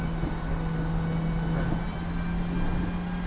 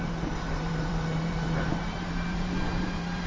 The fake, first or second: second